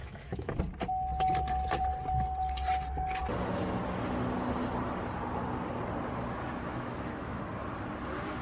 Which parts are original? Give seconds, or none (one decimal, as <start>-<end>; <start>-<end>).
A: 0.6-6.7; 7.4-8.4